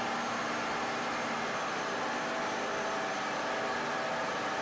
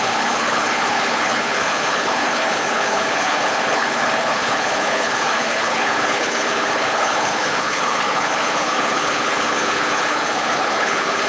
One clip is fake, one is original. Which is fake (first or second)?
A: second